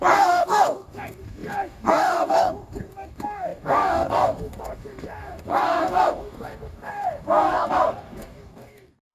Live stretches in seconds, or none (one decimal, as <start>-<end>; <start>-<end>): none